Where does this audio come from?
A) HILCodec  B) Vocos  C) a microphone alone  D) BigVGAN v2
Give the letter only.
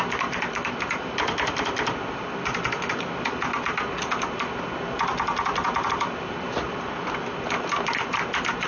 C